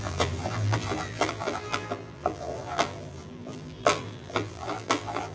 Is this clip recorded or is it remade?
remade